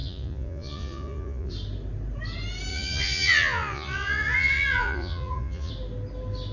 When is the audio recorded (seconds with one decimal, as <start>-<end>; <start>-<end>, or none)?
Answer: 1.5-2.7; 5.7-6.5